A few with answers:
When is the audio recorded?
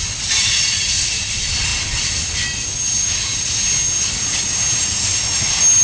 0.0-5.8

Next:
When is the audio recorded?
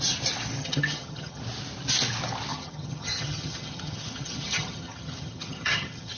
0.0-0.6; 1.4-2.5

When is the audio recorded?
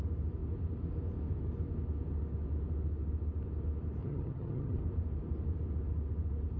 0.0-4.0; 4.8-6.6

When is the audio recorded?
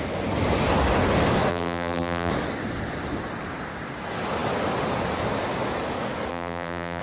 0.0-1.5; 2.3-6.3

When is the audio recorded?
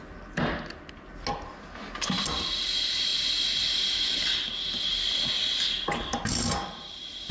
0.0-7.3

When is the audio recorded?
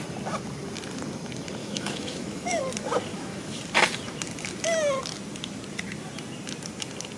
0.0-1.6; 2.6-3.1; 3.6-7.2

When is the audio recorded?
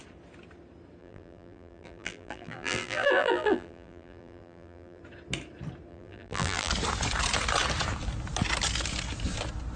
0.0-1.0; 5.0-5.9; 6.7-9.8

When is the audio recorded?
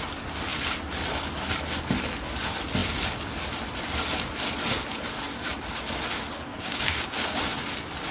0.0-6.5; 7.4-8.1